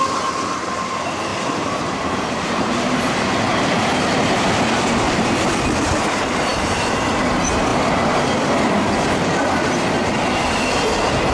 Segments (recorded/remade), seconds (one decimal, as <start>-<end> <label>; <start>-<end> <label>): 0.0-1.3 recorded; 1.3-3.9 remade; 3.9-11.3 recorded